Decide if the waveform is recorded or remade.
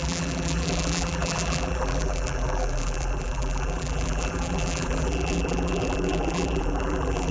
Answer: remade